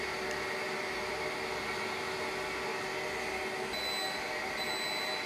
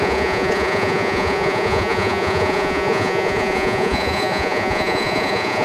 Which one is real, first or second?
first